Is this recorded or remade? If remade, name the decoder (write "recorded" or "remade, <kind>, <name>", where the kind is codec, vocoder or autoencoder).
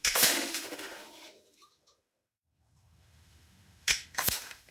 remade, autoencoder, DAC-VAE